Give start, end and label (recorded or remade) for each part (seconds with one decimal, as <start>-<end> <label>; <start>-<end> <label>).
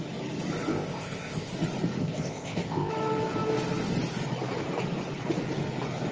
0.0-0.7 recorded; 0.7-1.5 remade; 1.5-2.0 recorded; 2.0-2.9 remade; 2.9-6.1 recorded